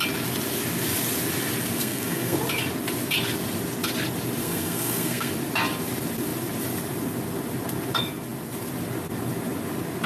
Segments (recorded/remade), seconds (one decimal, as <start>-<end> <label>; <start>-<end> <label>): 0.0-1.8 recorded; 1.8-2.4 remade; 2.4-4.4 recorded; 4.4-5.3 remade; 5.3-10.1 recorded